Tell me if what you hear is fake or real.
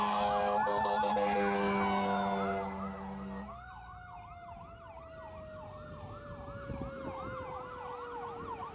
real